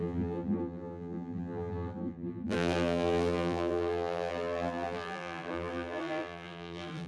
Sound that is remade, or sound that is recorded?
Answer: remade